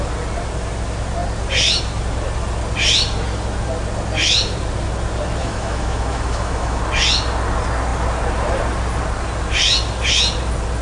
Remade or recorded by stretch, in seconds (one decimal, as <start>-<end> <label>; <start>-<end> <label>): 0.0-5.4 recorded; 5.4-6.8 remade; 6.8-10.8 recorded